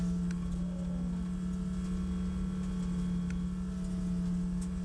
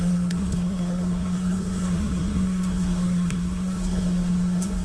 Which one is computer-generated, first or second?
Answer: second